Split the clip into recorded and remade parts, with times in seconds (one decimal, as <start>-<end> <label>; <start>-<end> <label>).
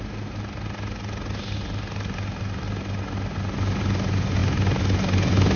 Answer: 0.0-5.6 recorded